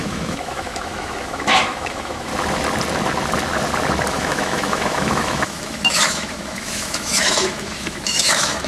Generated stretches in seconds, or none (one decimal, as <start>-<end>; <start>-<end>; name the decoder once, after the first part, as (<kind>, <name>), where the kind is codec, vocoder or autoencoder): 0.0-2.3 (autoencoder, DAC-VAE); 4.1-8.7